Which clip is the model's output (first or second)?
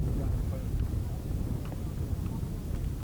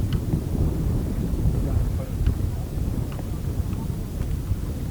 second